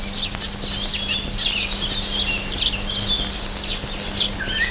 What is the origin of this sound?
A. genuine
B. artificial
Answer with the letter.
A